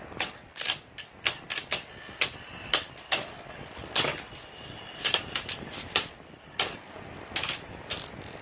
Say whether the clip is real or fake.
real